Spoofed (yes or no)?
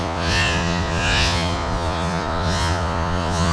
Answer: yes